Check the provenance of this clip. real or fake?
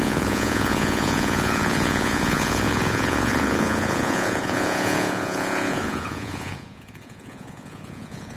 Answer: fake